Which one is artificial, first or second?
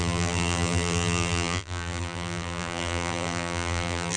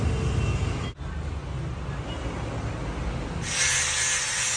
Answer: first